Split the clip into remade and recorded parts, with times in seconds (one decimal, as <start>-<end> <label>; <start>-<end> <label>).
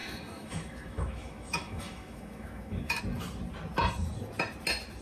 0.0-3.0 remade; 3.0-5.0 recorded